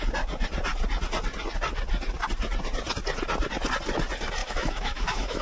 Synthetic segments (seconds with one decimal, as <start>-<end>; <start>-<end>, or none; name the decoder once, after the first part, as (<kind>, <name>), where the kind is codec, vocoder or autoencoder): 4.4-5.4 (autoencoder, DAC-VAE)